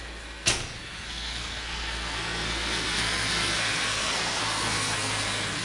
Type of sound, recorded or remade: remade